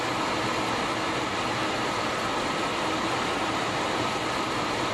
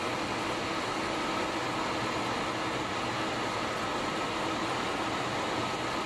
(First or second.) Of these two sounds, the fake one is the first